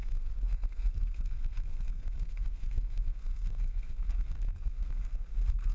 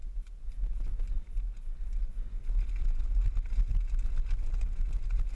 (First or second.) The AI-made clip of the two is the first